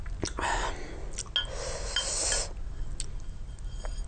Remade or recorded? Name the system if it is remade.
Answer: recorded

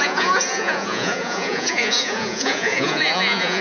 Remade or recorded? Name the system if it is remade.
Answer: remade, vocoder, Vocos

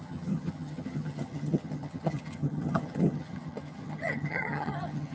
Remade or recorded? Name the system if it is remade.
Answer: remade, vocoder, HiFi-GAN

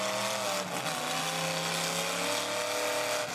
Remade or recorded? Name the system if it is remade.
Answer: recorded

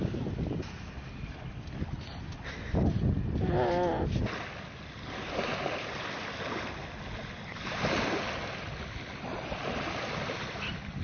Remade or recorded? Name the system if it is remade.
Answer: recorded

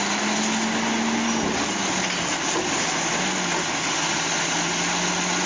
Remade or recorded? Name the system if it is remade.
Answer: recorded